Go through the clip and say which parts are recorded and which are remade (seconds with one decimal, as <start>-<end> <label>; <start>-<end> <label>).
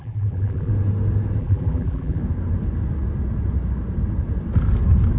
0.0-0.7 remade; 0.7-1.4 recorded; 1.4-2.2 remade; 2.2-5.2 recorded